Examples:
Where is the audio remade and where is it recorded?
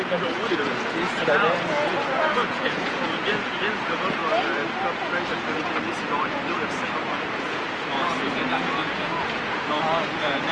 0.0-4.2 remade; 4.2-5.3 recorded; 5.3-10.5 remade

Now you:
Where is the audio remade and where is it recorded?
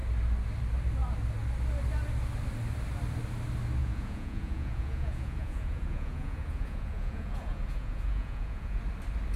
0.0-3.8 recorded; 3.8-8.8 remade; 8.8-9.4 recorded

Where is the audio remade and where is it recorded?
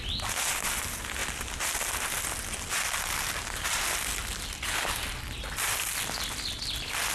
0.0-7.1 recorded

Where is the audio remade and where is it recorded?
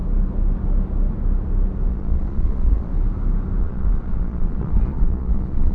0.0-1.9 recorded; 1.9-2.9 remade; 2.9-3.6 recorded; 3.6-5.7 remade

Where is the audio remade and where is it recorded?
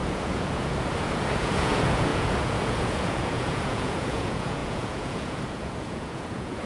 0.0-6.7 remade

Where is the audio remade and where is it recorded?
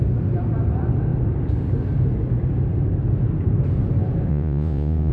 0.0-4.3 recorded; 4.3-5.1 remade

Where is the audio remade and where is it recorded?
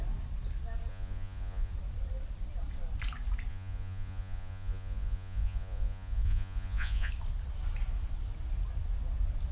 0.0-0.9 recorded; 0.9-1.7 remade; 1.7-3.5 recorded; 3.5-7.1 remade; 7.1-9.5 recorded